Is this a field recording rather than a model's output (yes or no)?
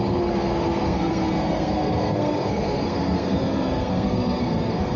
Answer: no